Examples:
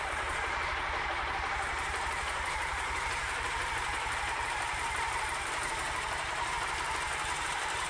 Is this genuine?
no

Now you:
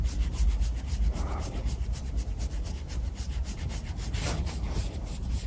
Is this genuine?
no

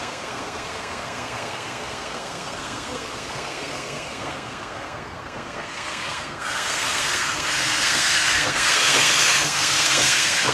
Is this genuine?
no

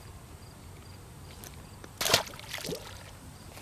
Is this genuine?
yes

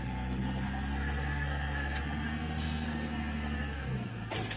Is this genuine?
no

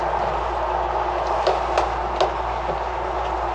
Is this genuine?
yes